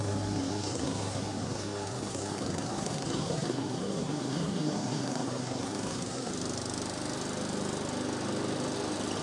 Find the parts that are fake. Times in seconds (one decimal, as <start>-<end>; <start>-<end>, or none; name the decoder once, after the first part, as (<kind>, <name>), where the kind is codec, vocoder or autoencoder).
0.0-6.3 (codec, SNAC)